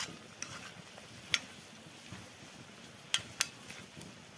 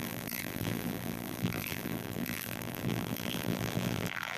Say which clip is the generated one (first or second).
second